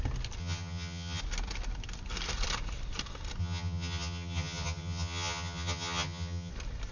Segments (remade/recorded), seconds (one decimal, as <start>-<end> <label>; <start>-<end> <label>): 0.0-0.4 recorded; 0.4-1.2 remade; 1.2-3.4 recorded; 3.4-6.5 remade; 6.5-6.9 recorded